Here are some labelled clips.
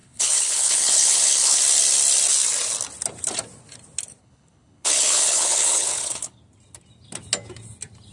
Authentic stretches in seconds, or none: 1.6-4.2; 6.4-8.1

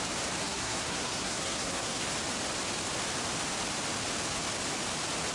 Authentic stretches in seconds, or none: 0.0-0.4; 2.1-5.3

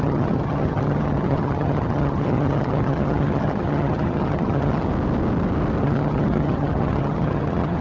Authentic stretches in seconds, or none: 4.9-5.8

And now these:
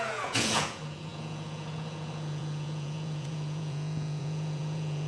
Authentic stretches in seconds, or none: none

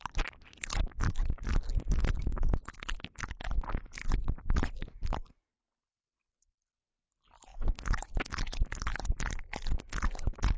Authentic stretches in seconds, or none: 0.0-4.0; 6.7-10.6

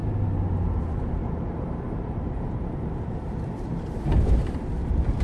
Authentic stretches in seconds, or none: 0.0-1.2

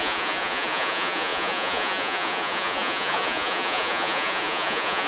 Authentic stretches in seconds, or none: none

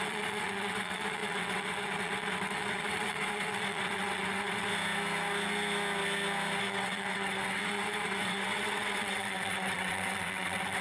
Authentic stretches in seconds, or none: 4.7-6.6